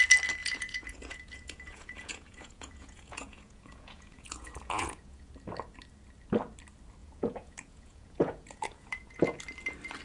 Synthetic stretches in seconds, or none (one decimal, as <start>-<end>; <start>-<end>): 0.4-5.3; 7.0-9.4